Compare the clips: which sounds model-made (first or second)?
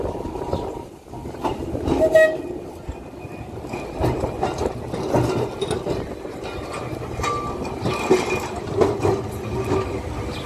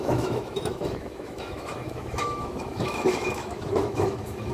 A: second